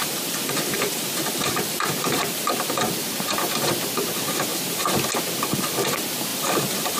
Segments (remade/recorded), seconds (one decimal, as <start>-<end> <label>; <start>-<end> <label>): 0.0-3.0 remade; 3.0-4.5 recorded; 4.5-5.1 remade; 5.1-6.3 recorded; 6.3-7.0 remade